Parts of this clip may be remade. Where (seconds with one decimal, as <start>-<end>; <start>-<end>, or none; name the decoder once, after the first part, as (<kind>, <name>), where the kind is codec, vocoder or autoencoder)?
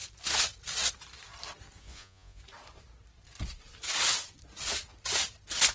1.8-2.4 (vocoder, Vocos)